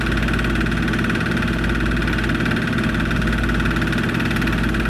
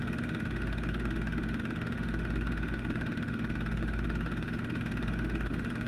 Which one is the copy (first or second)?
second